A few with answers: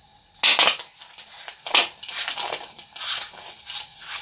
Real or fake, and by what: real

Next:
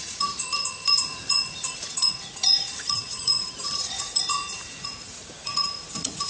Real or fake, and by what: fake, vocoder, Vocos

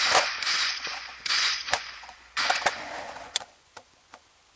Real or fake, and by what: fake, vocoder, Vocos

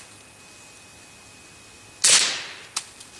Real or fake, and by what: real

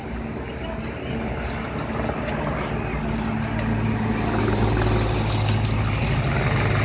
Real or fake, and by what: real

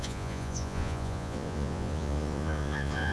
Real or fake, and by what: fake, vocoder, Vocos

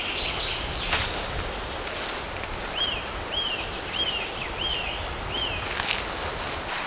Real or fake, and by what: real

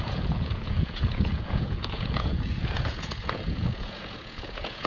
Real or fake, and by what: fake, vocoder, Vocos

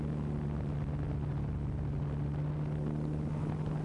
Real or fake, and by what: real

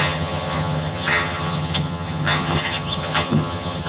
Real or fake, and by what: fake, vocoder, HiFi-GAN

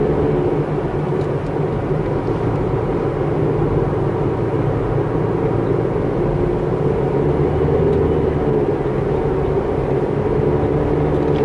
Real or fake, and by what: real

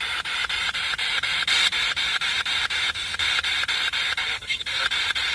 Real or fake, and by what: fake, vocoder, BigVGAN v2